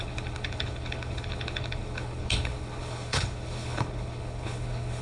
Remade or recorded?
remade